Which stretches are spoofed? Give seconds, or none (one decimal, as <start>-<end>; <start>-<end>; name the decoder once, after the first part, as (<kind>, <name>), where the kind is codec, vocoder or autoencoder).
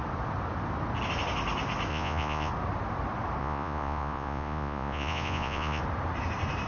1.9-2.5 (vocoder, Vocos); 3.4-5.8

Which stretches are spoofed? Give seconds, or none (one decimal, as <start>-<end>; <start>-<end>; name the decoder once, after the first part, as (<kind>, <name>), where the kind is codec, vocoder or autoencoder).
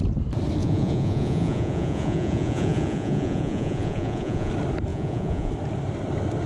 0.6-4.5 (vocoder, Vocos); 4.9-5.5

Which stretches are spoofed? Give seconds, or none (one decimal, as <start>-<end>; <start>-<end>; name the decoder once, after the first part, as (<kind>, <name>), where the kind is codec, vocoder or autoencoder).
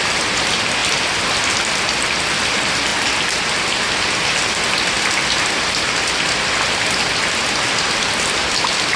none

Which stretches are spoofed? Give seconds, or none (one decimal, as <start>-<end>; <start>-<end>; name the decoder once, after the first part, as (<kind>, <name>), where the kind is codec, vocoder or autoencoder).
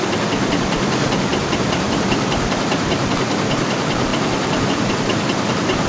0.0-1.3 (vocoder, BigVGAN v2); 2.1-5.9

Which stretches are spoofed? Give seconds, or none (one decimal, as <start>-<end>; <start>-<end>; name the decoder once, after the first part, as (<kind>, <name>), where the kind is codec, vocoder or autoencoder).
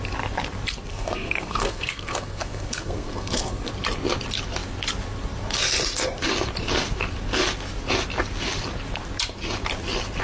0.9-3.7 (codec, SNAC)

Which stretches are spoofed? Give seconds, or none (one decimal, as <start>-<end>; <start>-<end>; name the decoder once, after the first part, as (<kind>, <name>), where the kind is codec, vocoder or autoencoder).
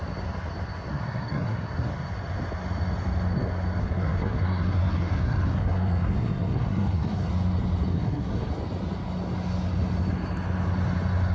0.9-1.9 (codec, SNAC); 3.8-7.3; 7.9-8.5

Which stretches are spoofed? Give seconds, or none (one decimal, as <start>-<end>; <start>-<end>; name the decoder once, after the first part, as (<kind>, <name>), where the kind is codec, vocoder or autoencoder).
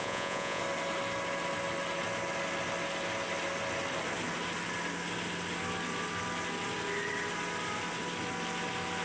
0.0-0.6 (vocoder, Vocos)